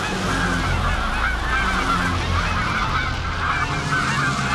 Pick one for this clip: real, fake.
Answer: real